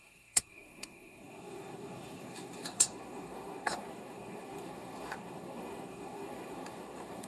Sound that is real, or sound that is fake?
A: fake